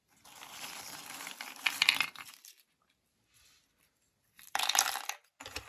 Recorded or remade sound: recorded